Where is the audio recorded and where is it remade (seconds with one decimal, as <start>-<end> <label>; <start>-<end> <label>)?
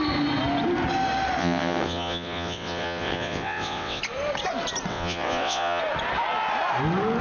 0.0-1.4 recorded; 1.4-4.0 remade; 4.0-4.9 recorded; 4.9-5.8 remade; 5.8-7.2 recorded